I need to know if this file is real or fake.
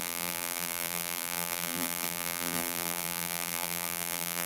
fake